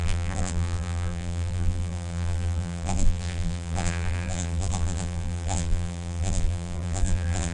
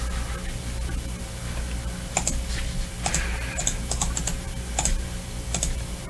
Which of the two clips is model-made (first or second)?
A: first